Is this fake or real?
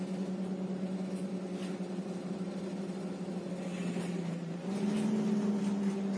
real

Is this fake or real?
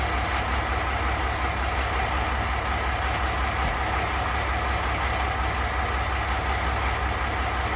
real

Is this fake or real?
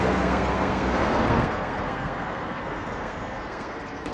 fake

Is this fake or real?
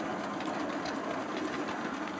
real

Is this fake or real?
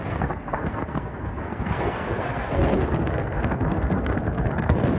fake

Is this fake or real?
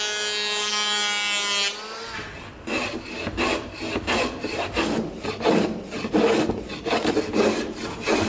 real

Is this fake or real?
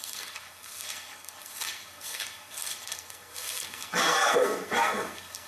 fake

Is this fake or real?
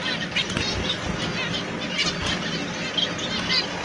real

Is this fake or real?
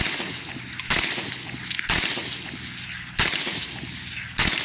real